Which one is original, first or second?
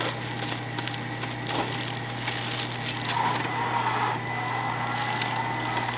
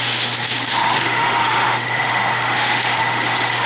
first